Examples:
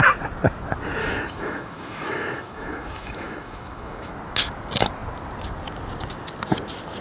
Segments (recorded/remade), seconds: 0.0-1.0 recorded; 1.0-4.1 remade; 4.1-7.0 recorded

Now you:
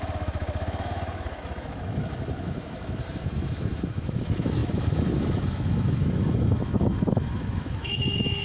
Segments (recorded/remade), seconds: 0.0-8.4 remade

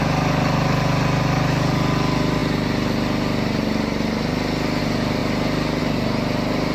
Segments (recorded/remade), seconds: 0.0-6.7 recorded

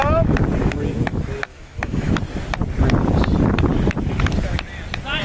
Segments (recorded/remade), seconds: 0.0-1.5 recorded; 1.5-2.1 remade; 2.1-5.2 recorded

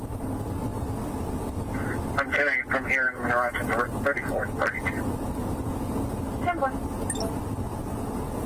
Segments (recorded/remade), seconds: 0.0-8.5 recorded

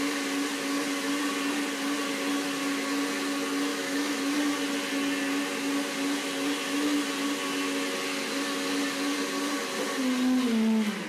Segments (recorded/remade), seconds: 0.0-3.7 recorded; 3.7-4.2 remade; 4.2-11.1 recorded

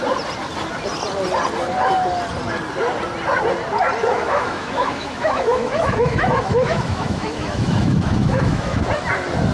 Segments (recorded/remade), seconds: 0.0-4.0 recorded; 4.0-8.8 remade; 8.8-9.5 recorded

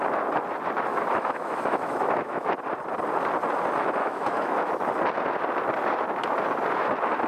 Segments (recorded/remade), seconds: 0.0-0.9 recorded; 0.9-2.5 remade; 2.5-4.0 recorded; 4.0-4.7 remade; 4.7-7.3 recorded